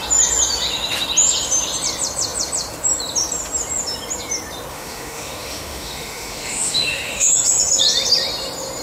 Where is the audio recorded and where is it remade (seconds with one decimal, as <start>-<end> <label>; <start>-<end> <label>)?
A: 0.0-4.7 recorded; 4.7-7.3 remade; 7.3-8.8 recorded